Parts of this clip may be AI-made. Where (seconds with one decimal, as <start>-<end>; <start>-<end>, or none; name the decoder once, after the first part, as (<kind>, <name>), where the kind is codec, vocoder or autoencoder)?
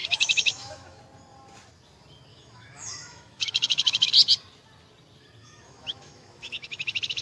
0.0-1.0 (autoencoder, DAC-VAE); 2.3-4.1; 5.4-7.2